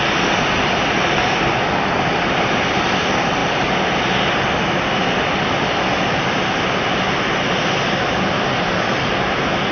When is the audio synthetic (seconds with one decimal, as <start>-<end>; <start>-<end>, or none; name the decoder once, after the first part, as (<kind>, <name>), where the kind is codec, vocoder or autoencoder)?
none